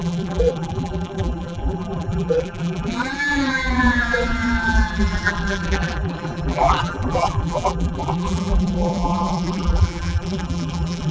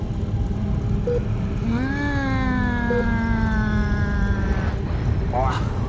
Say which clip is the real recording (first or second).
second